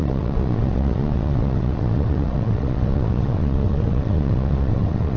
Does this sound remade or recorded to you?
remade